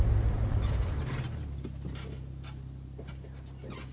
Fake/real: real